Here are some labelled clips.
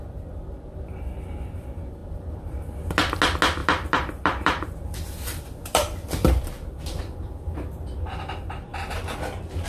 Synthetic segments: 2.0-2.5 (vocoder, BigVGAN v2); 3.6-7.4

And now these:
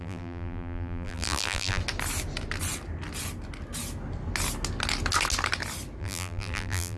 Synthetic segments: 0.0-1.8 (vocoder, BigVGAN v2); 6.0-7.0

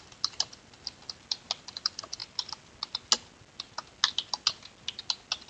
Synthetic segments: 0.0-1.0 (vocoder, BigVGAN v2); 1.6-2.2